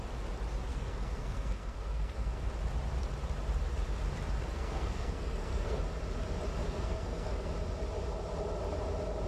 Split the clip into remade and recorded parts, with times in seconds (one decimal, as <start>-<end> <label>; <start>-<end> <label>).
0.0-0.7 recorded; 0.7-2.5 remade; 2.5-4.5 recorded; 4.5-5.8 remade; 5.8-6.6 recorded; 6.6-7.5 remade; 7.5-9.3 recorded